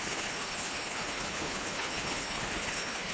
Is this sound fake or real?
fake